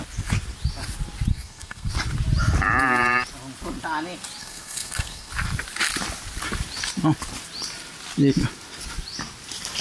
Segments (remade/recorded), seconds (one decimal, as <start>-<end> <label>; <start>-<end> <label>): 0.0-1.3 recorded; 1.3-1.9 remade; 1.9-4.4 recorded; 4.4-5.3 remade; 5.3-9.8 recorded

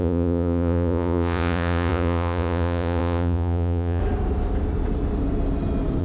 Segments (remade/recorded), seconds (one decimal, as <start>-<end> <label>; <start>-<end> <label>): 0.0-4.0 remade; 4.0-6.0 recorded

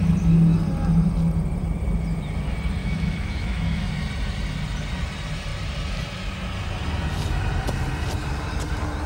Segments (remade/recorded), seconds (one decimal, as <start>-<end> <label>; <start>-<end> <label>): 0.0-2.8 recorded; 2.8-3.9 remade; 3.9-9.1 recorded

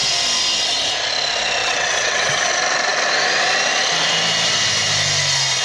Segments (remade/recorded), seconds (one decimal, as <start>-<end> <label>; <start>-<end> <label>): 0.0-1.6 recorded; 1.6-2.5 remade; 2.5-5.6 recorded

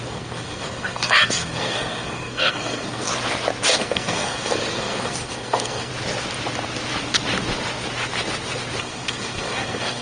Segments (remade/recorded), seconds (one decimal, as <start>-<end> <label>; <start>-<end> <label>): 0.0-3.1 remade; 3.1-3.7 recorded; 3.7-5.9 remade; 5.9-8.8 recorded; 8.8-10.0 remade

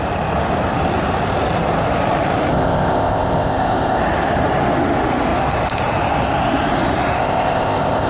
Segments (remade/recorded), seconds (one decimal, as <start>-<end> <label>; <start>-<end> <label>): 0.0-2.5 recorded; 2.5-4.0 remade; 4.0-7.2 recorded; 7.2-8.1 remade

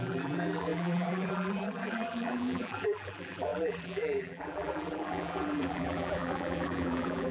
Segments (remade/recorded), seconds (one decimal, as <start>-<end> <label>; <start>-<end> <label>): 0.0-7.3 remade